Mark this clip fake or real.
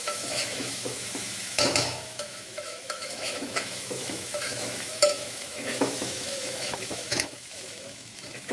fake